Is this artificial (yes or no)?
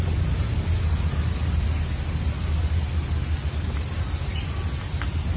no